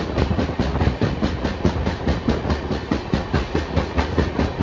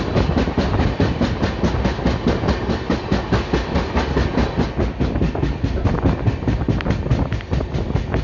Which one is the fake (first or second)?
first